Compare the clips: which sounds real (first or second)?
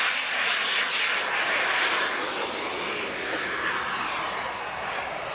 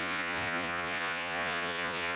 first